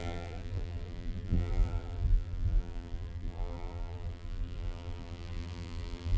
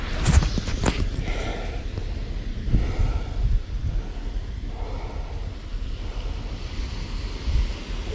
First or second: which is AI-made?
first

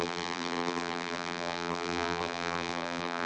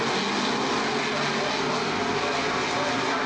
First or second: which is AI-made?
first